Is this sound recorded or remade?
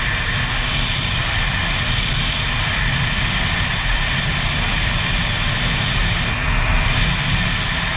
recorded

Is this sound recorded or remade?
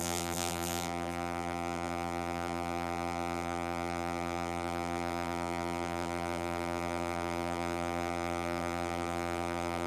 remade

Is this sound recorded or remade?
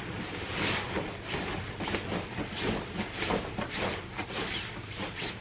recorded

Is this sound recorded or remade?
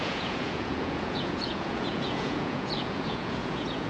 remade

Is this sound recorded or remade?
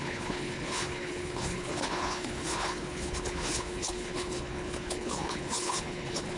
remade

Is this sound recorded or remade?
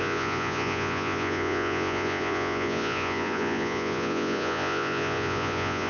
remade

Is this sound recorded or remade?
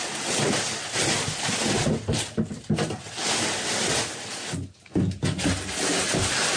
recorded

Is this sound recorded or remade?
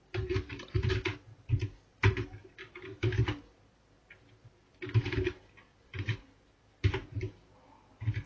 remade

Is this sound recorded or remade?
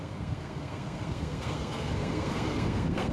remade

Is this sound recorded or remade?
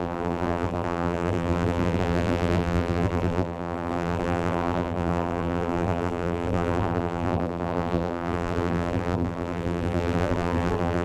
remade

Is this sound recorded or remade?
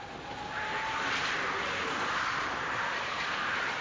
recorded